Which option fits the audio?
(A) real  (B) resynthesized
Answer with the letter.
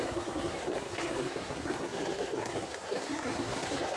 B